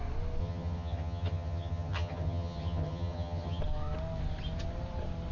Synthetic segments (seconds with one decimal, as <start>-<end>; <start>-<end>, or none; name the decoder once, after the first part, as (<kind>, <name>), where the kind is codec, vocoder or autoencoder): 0.4-3.6 (vocoder, HiFi-GAN)